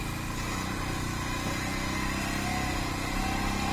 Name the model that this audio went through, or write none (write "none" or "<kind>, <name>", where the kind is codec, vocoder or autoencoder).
none